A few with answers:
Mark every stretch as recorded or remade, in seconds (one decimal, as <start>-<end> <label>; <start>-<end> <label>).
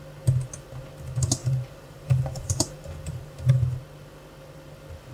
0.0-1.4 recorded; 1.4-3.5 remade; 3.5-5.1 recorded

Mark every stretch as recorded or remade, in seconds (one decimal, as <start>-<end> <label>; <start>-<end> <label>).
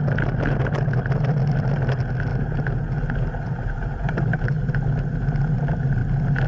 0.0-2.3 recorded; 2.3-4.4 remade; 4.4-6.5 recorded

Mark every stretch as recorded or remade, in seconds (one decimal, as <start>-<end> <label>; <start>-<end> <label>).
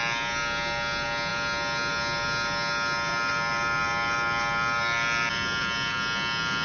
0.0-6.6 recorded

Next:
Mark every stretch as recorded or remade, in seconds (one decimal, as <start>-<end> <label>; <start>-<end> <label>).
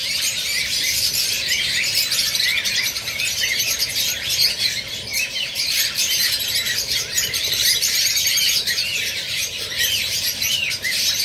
0.0-1.3 remade; 1.3-2.5 recorded; 2.5-3.4 remade; 3.4-5.1 recorded; 5.1-10.2 remade; 10.2-11.2 recorded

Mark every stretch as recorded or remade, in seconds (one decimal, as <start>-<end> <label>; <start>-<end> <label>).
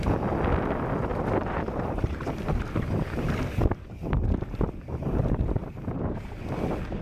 0.0-1.1 recorded; 1.1-3.5 remade; 3.5-5.6 recorded; 5.6-6.3 remade; 6.3-7.0 recorded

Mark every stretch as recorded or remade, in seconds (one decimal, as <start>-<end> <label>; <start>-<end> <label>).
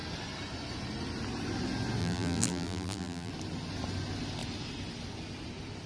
0.0-2.0 recorded; 2.0-3.3 remade; 3.3-5.9 recorded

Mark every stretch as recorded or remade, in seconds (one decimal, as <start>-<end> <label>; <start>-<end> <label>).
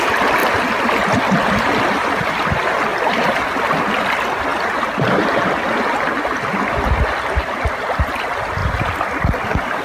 0.0-2.9 recorded; 2.9-3.8 remade; 3.8-8.6 recorded; 8.6-9.8 remade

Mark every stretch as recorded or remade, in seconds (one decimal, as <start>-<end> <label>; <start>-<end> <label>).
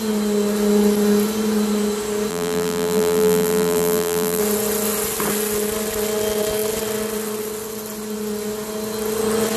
0.0-2.3 recorded; 2.3-4.4 remade; 4.4-9.6 recorded